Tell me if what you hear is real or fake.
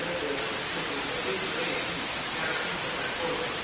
real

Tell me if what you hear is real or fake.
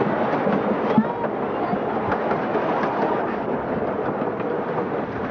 real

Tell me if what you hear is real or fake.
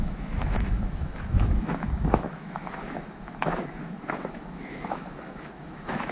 fake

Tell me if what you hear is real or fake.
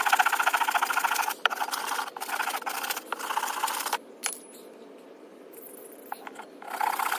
real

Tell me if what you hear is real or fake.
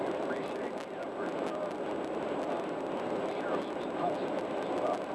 real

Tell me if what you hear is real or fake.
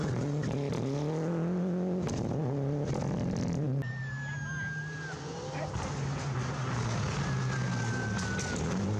real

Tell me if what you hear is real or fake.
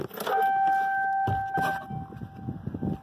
real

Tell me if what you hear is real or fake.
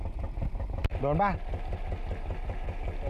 real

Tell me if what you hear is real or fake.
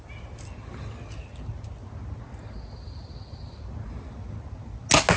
real